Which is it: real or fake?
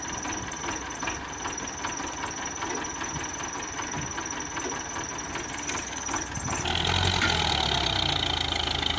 real